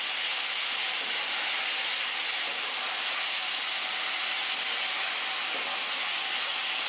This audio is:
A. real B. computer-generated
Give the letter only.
A